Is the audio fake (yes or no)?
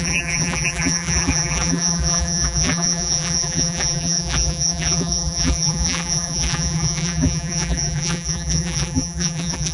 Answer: yes